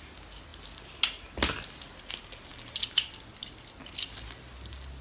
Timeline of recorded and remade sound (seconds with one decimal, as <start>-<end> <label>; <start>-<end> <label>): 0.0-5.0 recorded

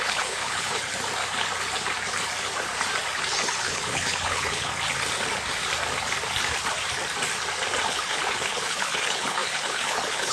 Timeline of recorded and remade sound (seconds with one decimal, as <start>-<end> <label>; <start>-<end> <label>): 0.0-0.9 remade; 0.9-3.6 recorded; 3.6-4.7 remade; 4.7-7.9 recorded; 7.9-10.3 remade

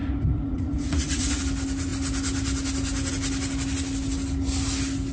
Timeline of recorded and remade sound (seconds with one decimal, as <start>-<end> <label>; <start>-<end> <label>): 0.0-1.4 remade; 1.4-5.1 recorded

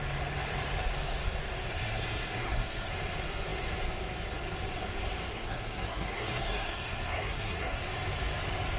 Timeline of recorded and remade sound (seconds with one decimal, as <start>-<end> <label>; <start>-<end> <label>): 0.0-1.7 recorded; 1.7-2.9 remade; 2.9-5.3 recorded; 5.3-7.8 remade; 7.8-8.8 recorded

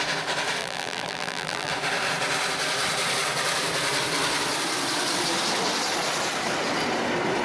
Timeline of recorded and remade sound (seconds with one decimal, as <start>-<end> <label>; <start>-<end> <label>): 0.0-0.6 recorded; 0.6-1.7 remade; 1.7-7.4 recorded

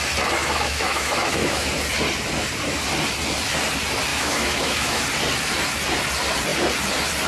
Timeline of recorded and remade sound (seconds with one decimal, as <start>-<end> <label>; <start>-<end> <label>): 0.0-0.4 recorded; 0.4-1.7 remade; 1.7-4.1 recorded; 4.1-5.0 remade; 5.0-7.3 recorded

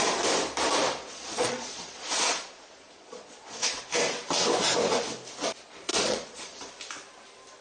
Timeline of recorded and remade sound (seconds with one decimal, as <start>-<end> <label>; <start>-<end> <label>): 0.0-1.0 recorded; 1.0-3.8 remade; 3.8-5.9 recorded; 5.9-6.7 remade; 6.7-7.6 recorded